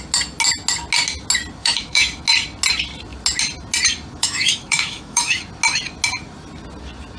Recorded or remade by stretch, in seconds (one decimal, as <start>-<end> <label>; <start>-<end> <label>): 0.0-1.6 recorded; 1.6-2.2 remade; 2.2-4.2 recorded; 4.2-5.4 remade; 5.4-7.2 recorded